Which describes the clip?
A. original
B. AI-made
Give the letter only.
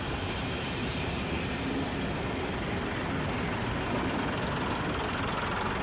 A